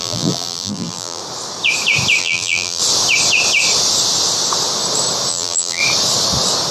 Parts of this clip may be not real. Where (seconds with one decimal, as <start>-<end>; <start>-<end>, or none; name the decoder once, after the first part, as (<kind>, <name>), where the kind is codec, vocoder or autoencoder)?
0.0-1.2 (vocoder, BigVGAN v2); 2.2-2.8; 5.3-5.8